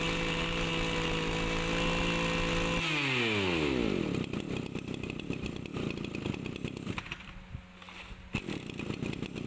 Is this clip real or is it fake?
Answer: real